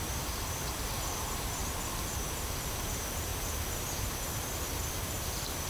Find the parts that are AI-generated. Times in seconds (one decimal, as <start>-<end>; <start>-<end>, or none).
0.0-1.6; 2.3-3.3; 4.9-5.7